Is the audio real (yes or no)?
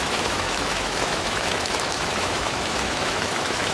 no